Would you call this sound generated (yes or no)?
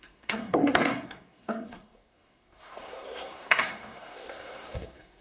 yes